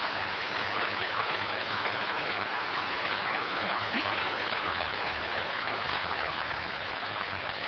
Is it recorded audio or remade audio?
remade